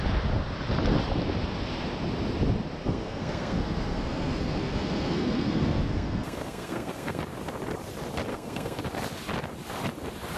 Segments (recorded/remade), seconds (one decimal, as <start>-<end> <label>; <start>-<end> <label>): 0.0-2.8 recorded; 2.8-7.2 remade; 7.2-8.3 recorded; 8.3-8.8 remade; 8.8-10.4 recorded

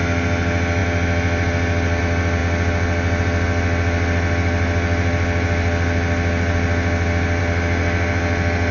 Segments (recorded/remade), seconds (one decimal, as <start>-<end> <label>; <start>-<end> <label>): 0.0-8.7 recorded

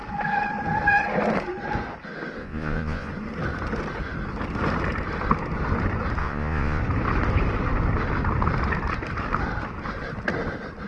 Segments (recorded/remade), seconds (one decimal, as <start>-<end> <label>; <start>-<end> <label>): 0.0-2.4 recorded; 2.4-3.1 remade; 3.1-6.2 recorded; 6.2-6.8 remade; 6.8-10.9 recorded

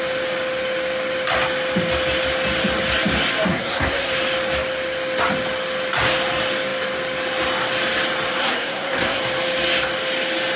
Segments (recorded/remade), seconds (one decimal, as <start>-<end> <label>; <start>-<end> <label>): 0.0-3.5 recorded; 3.5-4.1 remade; 4.1-8.4 recorded; 8.4-9.2 remade; 9.2-10.6 recorded

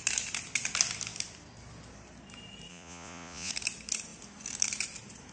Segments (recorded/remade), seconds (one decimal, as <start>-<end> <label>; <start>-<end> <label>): 0.0-2.7 recorded; 2.7-3.5 remade; 3.5-5.3 recorded

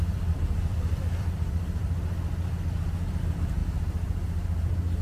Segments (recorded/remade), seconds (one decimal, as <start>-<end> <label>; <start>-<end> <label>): 0.0-1.8 remade; 1.8-3.1 recorded; 3.1-3.6 remade; 3.6-5.0 recorded

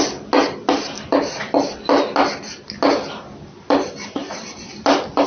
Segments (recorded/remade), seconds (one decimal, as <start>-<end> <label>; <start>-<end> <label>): 0.0-4.2 recorded; 4.2-5.3 remade

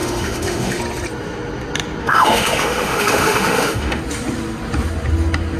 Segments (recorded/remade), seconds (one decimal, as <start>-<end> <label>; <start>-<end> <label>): 0.0-0.8 remade; 0.8-2.0 recorded; 2.0-4.0 remade; 4.0-5.6 recorded